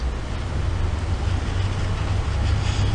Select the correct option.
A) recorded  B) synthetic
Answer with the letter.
A